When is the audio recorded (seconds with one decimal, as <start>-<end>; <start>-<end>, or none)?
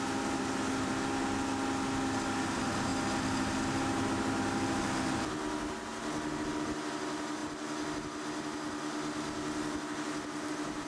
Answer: 0.0-10.9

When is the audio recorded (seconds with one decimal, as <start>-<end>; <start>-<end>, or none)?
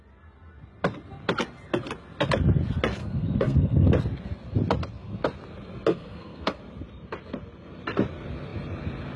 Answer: 0.0-3.0; 3.9-5.9; 6.6-9.2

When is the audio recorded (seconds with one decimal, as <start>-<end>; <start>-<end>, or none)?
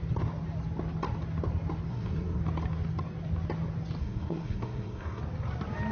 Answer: 0.0-1.9; 2.4-4.0; 5.2-5.9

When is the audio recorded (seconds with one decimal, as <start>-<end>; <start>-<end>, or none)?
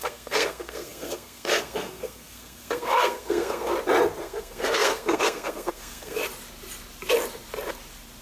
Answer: 3.7-4.2; 6.2-8.2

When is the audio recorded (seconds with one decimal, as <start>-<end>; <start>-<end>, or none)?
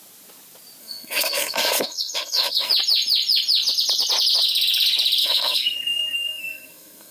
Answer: 0.0-0.8; 2.7-5.2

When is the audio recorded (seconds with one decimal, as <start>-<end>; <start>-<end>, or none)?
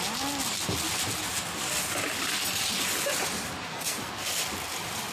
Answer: 0.0-3.7; 4.3-5.1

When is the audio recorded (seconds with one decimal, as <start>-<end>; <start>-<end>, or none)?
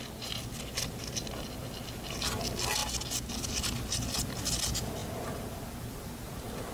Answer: 0.0-6.7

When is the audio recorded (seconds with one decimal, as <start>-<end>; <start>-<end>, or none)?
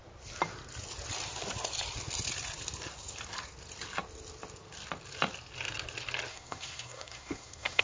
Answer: 0.0-6.3